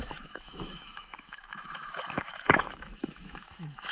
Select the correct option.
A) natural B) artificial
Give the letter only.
B